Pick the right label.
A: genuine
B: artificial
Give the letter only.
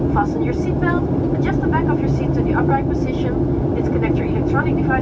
A